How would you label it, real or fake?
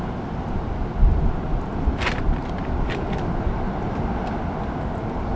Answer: real